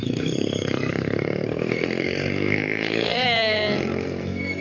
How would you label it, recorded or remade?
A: remade